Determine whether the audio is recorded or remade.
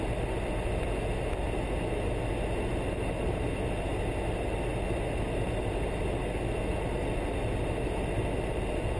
recorded